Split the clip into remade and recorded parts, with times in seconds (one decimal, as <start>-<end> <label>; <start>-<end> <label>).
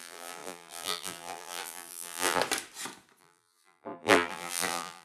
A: 0.0-2.4 remade; 2.4-3.2 recorded; 3.2-5.0 remade